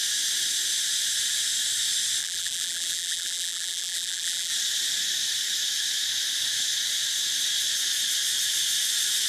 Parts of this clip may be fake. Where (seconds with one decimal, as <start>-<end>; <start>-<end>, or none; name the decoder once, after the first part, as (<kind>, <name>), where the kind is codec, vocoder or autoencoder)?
2.2-4.5 (vocoder, BigVGAN v2)